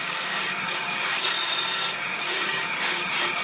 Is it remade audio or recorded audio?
remade